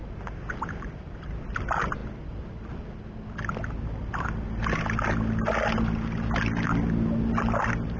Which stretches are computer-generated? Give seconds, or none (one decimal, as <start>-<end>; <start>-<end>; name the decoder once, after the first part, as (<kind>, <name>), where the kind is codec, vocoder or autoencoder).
0.0-1.5 (vocoder, BigVGAN v2); 4.0-4.6